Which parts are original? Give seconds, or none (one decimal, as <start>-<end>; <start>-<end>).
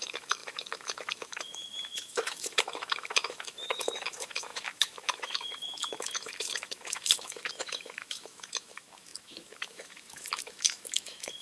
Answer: none